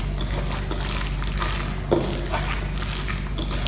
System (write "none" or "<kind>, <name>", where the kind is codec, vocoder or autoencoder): none